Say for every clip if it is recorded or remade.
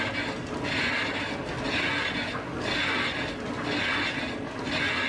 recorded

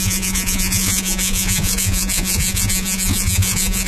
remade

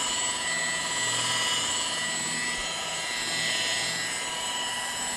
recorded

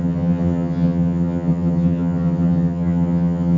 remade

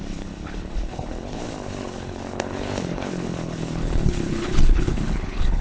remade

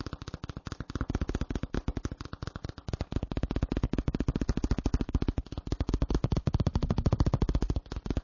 recorded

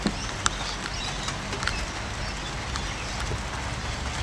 recorded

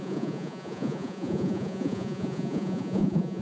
remade